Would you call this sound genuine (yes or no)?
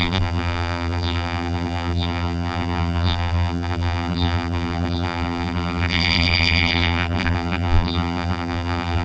no